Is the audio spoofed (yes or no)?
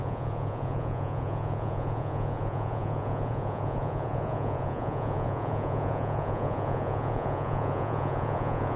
yes